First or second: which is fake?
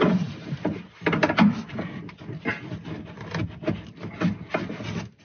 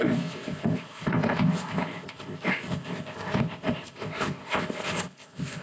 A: second